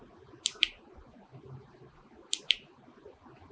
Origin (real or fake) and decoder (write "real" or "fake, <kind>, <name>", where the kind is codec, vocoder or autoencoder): fake, vocoder, BigVGAN v2